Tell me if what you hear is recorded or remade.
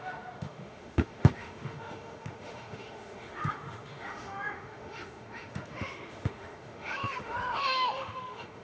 remade